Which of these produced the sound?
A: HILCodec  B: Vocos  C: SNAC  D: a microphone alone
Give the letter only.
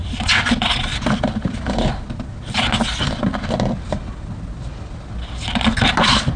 D